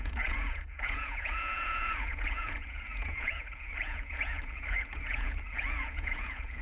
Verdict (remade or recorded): remade